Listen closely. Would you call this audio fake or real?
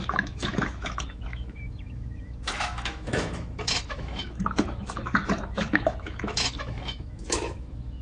fake